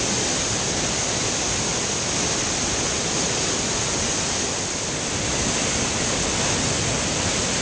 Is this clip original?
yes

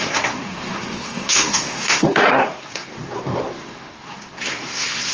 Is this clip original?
no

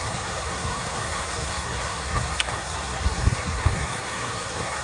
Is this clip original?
no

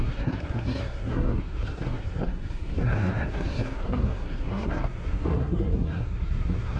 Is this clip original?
no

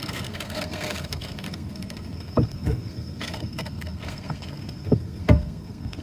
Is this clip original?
no